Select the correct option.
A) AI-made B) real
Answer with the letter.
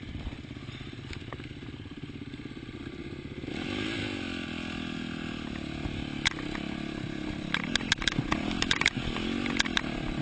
B